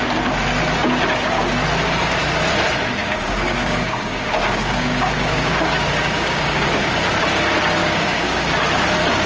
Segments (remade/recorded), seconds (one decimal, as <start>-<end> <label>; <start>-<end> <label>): 0.0-3.0 recorded; 3.0-6.9 remade; 6.9-7.8 recorded; 7.8-8.4 remade; 8.4-9.3 recorded